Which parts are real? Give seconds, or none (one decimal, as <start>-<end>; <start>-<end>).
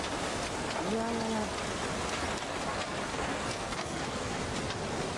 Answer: 0.0-3.1; 4.4-5.2